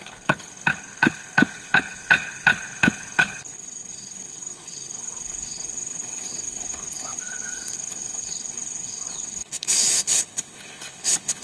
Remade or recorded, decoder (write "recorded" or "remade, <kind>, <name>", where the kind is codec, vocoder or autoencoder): remade, codec, HILCodec